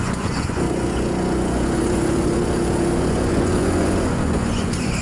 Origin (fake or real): fake